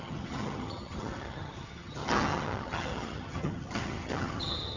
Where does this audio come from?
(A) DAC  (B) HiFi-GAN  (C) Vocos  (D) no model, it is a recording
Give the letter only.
B